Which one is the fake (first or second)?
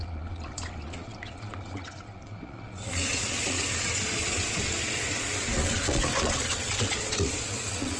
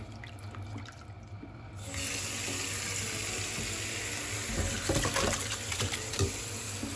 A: first